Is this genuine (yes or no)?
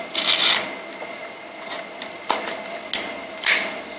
yes